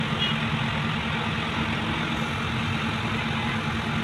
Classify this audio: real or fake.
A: real